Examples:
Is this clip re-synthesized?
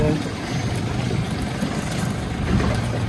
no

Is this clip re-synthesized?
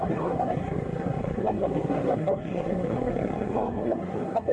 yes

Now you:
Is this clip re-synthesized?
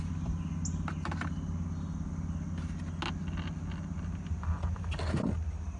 no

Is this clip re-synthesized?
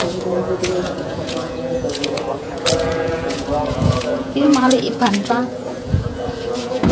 yes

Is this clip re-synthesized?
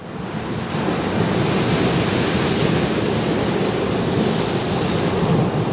no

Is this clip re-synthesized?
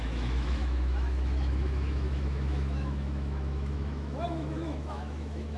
yes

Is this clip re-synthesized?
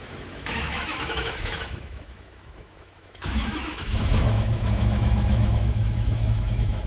yes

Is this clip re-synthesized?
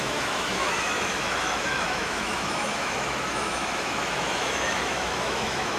yes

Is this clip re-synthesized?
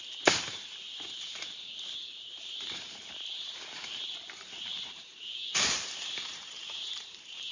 yes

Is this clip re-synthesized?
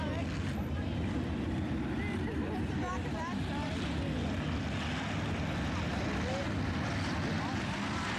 no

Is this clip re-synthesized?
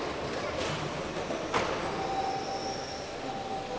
no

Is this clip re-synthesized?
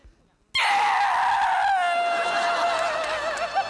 no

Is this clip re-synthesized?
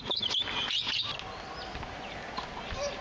no